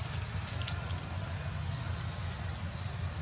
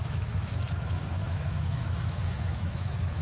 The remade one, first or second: second